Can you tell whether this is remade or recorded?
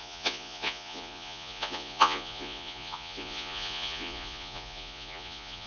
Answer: remade